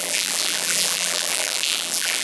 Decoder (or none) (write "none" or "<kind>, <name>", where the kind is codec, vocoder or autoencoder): vocoder, BigVGAN v2